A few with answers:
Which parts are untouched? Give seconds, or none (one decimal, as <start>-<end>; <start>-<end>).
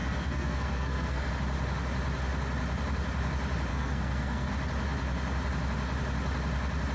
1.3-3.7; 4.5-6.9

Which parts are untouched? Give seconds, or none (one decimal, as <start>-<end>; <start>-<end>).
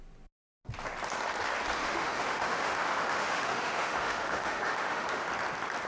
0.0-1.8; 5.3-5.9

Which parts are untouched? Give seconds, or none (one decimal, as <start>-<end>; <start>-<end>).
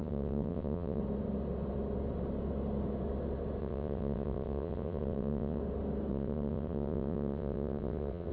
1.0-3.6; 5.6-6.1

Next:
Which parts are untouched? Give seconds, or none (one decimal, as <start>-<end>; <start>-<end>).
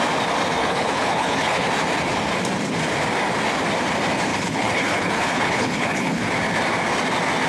0.0-0.6; 1.7-4.3; 6.2-7.5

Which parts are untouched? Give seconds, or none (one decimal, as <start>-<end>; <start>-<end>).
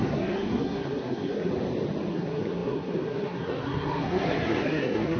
1.5-2.1